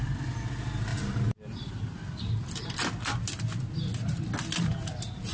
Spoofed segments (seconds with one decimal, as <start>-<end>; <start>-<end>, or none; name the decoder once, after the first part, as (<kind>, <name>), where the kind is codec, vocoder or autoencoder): none